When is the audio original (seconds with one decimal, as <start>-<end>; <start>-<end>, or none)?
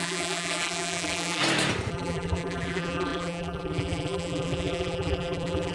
1.4-1.9